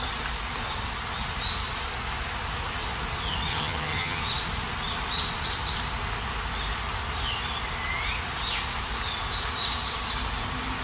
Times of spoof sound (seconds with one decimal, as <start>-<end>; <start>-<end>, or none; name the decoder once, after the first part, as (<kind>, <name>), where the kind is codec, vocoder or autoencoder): 3.5-4.2 (vocoder, HiFi-GAN)